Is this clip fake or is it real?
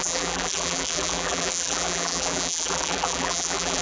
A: fake